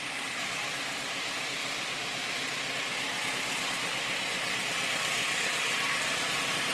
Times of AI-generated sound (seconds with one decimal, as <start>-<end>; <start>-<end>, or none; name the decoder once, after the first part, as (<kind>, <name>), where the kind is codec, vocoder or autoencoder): 1.6-3.3 (vocoder, BigVGAN v2); 5.2-6.7